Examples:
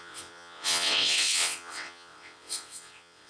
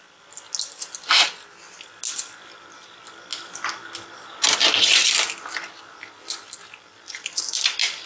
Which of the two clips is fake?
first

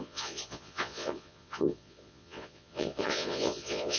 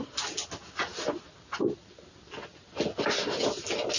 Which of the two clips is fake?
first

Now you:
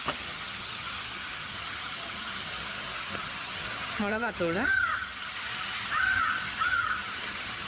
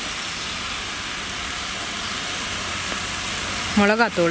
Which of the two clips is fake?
first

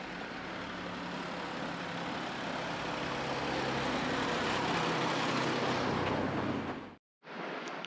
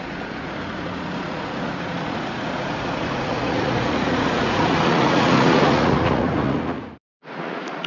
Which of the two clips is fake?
second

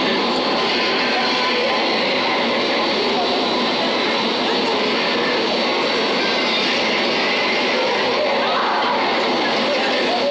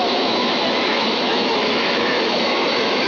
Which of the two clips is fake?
second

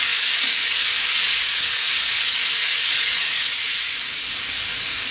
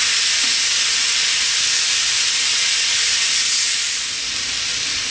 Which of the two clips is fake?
first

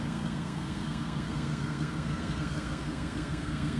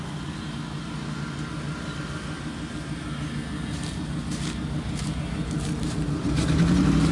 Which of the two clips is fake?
first